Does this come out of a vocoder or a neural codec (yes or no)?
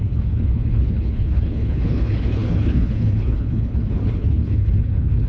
yes